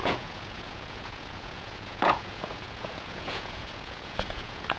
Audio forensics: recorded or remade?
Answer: remade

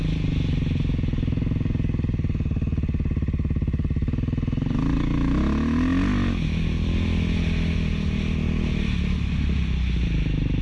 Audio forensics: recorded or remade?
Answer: recorded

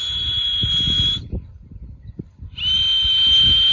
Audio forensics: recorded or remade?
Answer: remade